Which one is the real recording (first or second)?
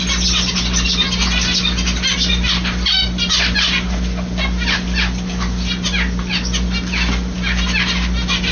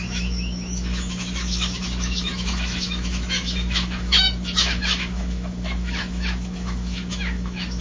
first